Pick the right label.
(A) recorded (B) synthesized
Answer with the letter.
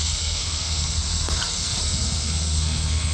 B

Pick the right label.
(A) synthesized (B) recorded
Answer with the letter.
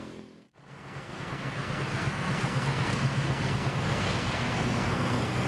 A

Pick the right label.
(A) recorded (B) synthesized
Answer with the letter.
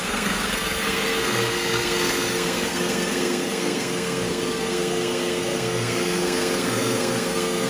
B